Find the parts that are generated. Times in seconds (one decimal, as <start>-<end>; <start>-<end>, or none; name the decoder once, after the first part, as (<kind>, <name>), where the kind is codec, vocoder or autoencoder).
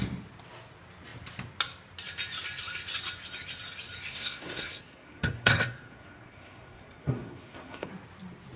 4.1-7.9 (codec, SNAC)